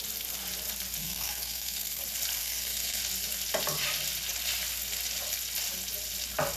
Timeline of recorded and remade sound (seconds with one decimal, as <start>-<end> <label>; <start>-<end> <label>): 0.0-1.0 recorded; 1.0-2.0 remade; 2.0-2.4 recorded; 2.4-3.0 remade; 3.0-6.6 recorded